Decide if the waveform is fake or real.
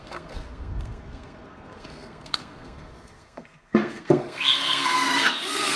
fake